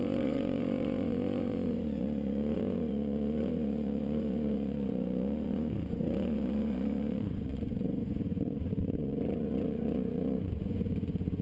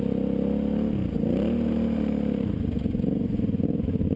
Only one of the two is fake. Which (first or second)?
first